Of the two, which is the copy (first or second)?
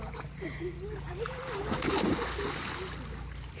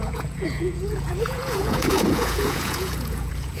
second